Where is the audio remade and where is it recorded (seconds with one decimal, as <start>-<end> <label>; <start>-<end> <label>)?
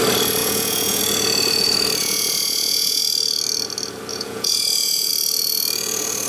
0.0-0.4 recorded; 0.4-1.0 remade; 1.0-2.0 recorded; 2.0-3.0 remade; 3.0-4.1 recorded; 4.1-5.1 remade; 5.1-6.3 recorded